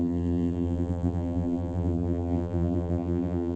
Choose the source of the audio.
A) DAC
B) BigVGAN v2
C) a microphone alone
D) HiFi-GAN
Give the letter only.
B